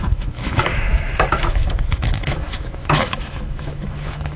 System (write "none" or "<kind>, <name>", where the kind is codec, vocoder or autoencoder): autoencoder, DAC-VAE